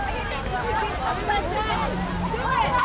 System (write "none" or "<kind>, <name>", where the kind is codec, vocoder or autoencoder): none